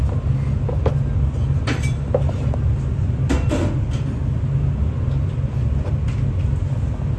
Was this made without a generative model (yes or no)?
yes